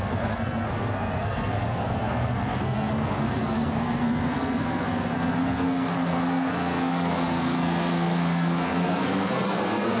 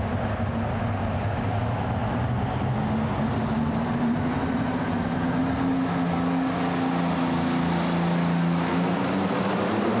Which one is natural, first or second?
second